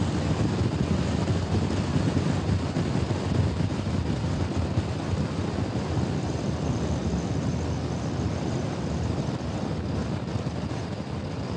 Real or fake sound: real